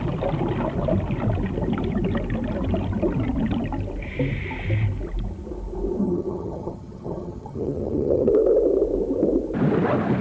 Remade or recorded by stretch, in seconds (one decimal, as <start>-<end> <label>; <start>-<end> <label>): 0.0-6.0 recorded; 6.0-8.3 remade; 8.3-10.2 recorded